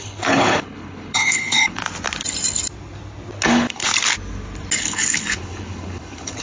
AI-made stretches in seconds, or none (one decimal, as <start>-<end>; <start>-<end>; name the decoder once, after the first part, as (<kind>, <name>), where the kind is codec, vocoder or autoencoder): 0.0-1.8 (codec, HILCodec); 3.5-3.9; 4.8-6.4